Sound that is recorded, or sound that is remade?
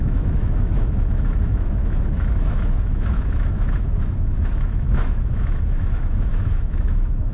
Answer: remade